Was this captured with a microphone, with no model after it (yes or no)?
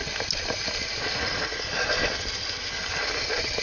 yes